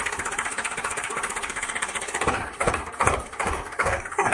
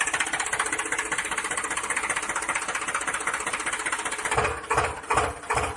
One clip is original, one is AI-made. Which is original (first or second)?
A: second